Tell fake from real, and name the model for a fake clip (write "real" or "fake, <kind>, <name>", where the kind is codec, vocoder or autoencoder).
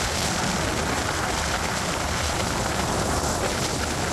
real